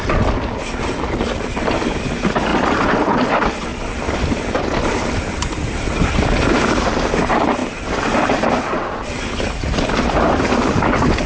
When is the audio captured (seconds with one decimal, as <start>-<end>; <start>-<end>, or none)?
0.0-2.5; 3.3-3.7; 6.9-7.6; 10.4-11.3